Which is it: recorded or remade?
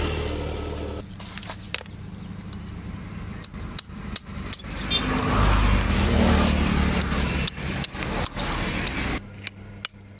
recorded